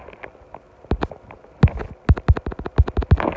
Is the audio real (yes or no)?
yes